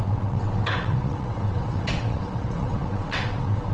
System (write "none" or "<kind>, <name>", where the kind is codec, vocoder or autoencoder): vocoder, WaveNeXt